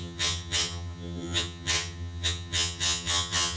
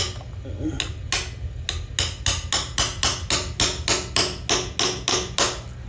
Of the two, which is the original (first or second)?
second